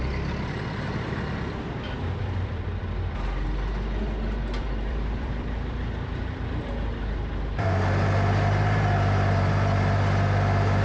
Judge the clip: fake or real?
fake